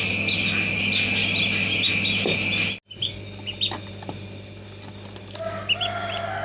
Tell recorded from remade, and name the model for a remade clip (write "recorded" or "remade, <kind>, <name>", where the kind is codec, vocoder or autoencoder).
recorded